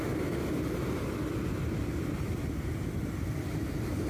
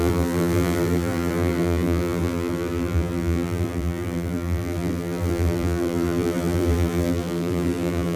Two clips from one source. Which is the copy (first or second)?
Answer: second